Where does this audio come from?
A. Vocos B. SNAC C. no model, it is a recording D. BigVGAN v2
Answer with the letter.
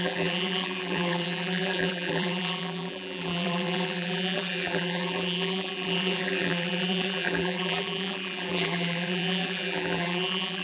D